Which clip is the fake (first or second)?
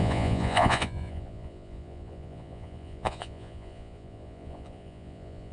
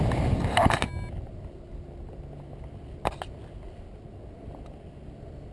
first